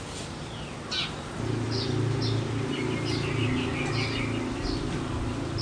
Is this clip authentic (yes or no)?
yes